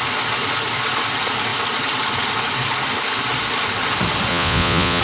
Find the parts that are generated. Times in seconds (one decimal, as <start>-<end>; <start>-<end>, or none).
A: 4.3-5.0

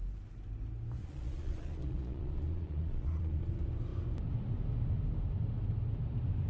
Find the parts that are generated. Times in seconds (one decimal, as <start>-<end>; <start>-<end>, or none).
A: 1.0-3.4